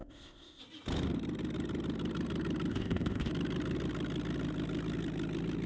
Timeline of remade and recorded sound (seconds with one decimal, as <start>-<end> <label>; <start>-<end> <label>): 0.0-0.6 remade; 0.6-2.7 recorded; 2.7-3.3 remade; 3.3-5.7 recorded